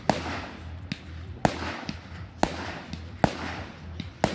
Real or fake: real